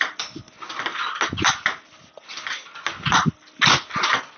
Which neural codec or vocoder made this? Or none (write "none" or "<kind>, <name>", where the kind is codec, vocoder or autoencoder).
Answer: none